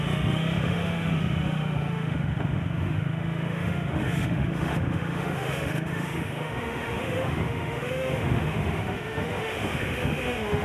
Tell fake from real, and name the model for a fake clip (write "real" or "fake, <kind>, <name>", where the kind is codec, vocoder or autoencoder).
fake, autoencoder, DAC-VAE